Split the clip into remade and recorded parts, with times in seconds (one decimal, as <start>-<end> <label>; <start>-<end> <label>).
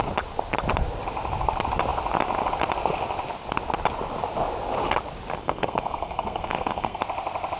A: 0.0-5.4 recorded; 5.4-7.0 remade; 7.0-7.6 recorded